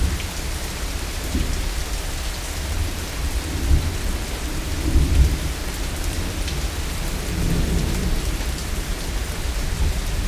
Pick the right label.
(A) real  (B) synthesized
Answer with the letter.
A